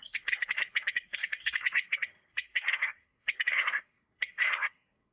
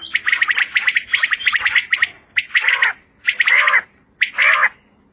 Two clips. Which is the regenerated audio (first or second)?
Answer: first